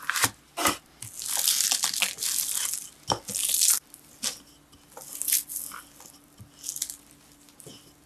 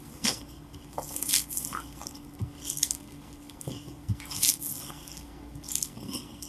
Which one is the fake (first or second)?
second